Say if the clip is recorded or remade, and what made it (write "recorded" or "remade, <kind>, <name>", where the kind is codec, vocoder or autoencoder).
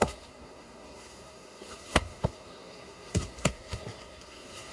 remade, codec, SNAC